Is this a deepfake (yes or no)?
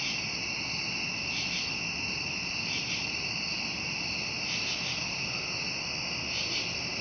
no